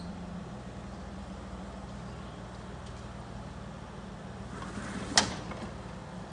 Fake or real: real